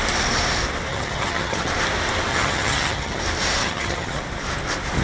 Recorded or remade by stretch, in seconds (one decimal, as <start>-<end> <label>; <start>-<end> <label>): 0.0-0.9 recorded; 0.9-1.7 remade; 1.7-2.3 recorded; 2.3-3.2 remade; 3.2-3.6 recorded; 3.6-4.2 remade; 4.2-5.0 recorded